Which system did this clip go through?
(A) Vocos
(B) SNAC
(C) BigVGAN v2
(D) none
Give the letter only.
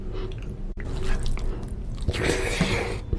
D